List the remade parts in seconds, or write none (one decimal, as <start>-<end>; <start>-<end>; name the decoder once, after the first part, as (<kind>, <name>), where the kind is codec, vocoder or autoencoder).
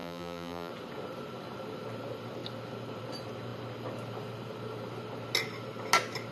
0.0-0.7 (vocoder, BigVGAN v2)